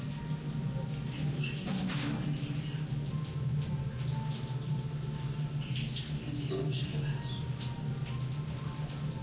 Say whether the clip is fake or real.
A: real